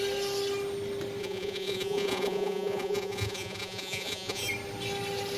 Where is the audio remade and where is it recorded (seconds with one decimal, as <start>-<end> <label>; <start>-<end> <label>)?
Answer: 0.0-1.2 recorded; 1.2-4.4 remade; 4.4-5.4 recorded